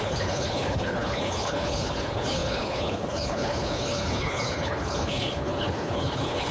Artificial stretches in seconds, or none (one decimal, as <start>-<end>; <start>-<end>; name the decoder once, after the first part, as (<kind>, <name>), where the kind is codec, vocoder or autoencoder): 0.0-6.5 (codec, HILCodec)